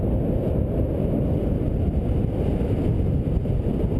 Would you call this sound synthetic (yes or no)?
no